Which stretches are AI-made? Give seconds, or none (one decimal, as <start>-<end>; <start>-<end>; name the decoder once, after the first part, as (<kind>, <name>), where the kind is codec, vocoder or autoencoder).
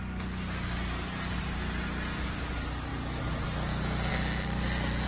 none